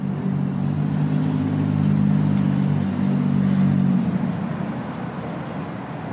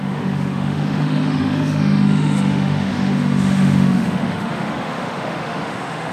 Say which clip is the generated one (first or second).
second